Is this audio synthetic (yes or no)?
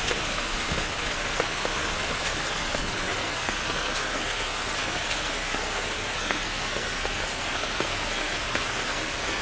yes